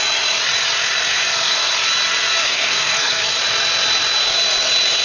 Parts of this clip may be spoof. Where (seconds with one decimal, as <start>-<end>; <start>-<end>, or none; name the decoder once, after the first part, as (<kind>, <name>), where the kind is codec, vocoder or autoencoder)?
1.1-1.7 (codec, SNAC); 2.4-3.3